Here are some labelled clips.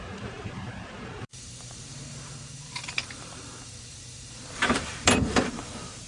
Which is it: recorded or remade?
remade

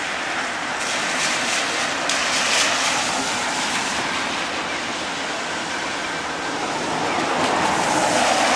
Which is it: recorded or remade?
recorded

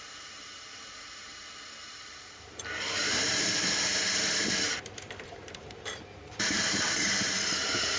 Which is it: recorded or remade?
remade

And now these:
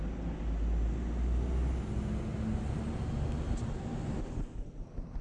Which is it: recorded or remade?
recorded